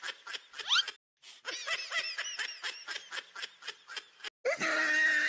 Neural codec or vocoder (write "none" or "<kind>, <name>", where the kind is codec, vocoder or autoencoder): none